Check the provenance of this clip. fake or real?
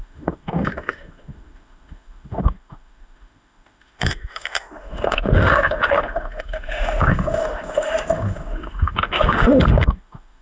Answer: fake